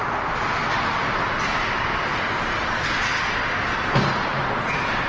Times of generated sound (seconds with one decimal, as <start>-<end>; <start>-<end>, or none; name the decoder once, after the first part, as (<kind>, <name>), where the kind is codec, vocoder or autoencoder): none